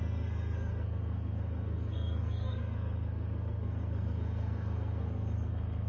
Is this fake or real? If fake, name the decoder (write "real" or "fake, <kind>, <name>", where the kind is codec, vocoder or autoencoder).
fake, codec, SNAC